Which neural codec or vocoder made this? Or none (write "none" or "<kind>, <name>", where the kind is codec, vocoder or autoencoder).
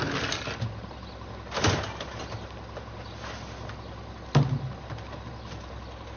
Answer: none